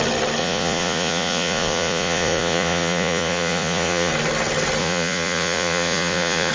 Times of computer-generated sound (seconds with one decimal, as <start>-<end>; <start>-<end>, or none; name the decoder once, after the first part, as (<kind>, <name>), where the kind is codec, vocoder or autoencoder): 0.4-4.1 (vocoder, Vocos); 4.8-6.5